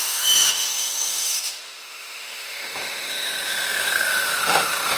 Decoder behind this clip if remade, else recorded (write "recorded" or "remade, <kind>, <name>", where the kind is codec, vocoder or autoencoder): remade, autoencoder, DAC-VAE